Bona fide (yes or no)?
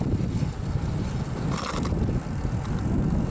yes